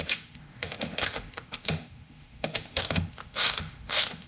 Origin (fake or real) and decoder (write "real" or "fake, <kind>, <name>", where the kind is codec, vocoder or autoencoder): fake, autoencoder, DAC-VAE